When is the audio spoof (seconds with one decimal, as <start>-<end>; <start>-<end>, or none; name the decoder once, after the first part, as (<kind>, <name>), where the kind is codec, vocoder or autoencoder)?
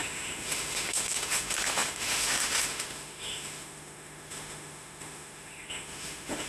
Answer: 0.0-6.5 (autoencoder, DAC-VAE)